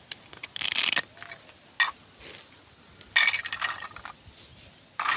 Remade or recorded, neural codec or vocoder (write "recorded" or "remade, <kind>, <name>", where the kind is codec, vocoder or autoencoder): recorded